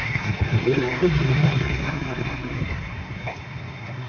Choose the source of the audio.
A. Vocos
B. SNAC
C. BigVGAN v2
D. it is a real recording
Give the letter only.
B